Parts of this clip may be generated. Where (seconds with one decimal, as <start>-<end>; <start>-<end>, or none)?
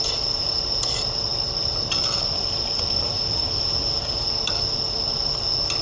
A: none